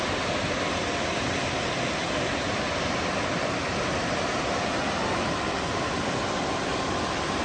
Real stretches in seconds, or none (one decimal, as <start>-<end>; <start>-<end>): 0.0-6.7